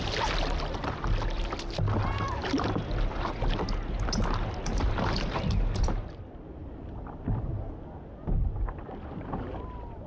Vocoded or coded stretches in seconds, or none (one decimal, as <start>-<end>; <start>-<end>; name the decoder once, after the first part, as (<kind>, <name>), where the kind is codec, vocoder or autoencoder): 2.4-3.5 (vocoder, BigVGAN v2); 6.6-7.4